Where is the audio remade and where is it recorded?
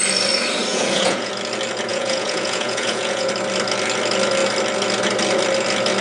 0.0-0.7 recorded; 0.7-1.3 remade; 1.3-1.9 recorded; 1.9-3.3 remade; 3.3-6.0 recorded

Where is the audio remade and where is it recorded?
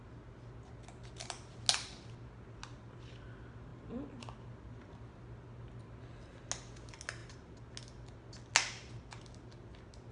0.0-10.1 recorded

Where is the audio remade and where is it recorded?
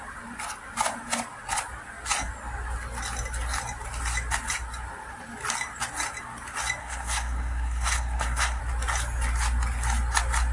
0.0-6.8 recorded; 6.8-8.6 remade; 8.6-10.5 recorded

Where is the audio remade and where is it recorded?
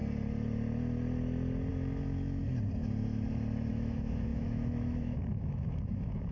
0.0-1.7 recorded; 1.7-2.4 remade; 2.4-3.7 recorded; 3.7-6.3 remade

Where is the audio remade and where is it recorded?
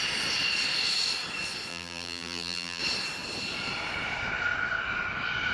0.0-1.7 recorded; 1.7-2.8 remade; 2.8-5.5 recorded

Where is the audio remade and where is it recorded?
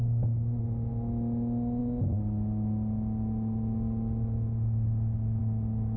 0.0-6.0 recorded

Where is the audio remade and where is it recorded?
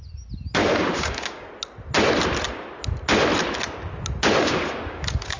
0.0-0.6 recorded; 0.6-1.5 remade; 1.5-4.4 recorded; 4.4-5.4 remade